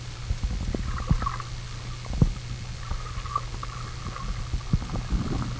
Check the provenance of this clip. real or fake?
real